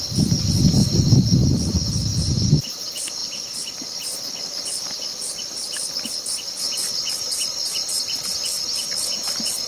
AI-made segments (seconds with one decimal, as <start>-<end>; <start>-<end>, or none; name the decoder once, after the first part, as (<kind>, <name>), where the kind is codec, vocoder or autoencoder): 2.1-2.8 (vocoder, BigVGAN v2)